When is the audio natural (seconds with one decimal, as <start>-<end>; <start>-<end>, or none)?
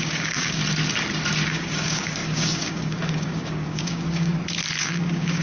0.6-1.5; 4.3-4.8